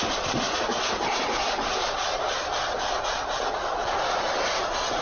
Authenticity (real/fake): real